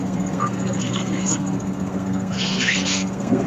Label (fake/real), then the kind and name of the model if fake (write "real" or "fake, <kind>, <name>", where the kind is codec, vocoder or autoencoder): fake, codec, SNAC